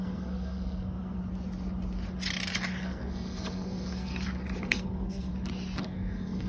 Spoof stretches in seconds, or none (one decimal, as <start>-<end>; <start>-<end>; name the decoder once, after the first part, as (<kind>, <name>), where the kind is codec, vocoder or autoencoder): 0.0-1.2 (codec, SNAC); 2.8-4.1; 4.6-5.3; 5.8-6.5